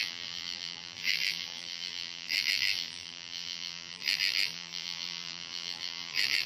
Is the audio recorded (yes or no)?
no